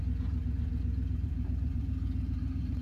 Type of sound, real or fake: fake